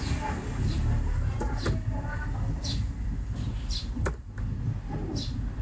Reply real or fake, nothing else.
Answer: real